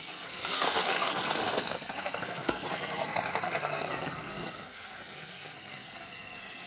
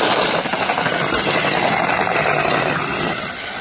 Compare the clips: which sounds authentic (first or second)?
second